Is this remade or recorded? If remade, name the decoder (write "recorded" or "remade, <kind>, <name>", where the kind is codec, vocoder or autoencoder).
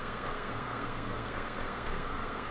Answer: remade, codec, SNAC